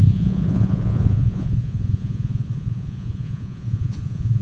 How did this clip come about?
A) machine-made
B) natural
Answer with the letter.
A